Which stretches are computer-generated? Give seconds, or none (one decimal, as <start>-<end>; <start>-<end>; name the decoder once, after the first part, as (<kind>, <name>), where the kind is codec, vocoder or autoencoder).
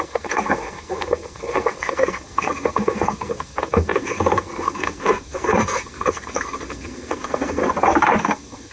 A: 0.0-7.6 (codec, SNAC); 8.2-8.7